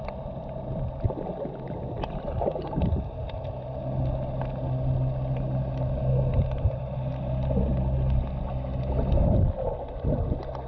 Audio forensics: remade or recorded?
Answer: recorded